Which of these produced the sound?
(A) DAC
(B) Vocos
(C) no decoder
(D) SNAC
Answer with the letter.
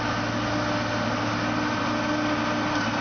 C